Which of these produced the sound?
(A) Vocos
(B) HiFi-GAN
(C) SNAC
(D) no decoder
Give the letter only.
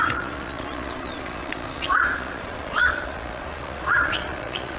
A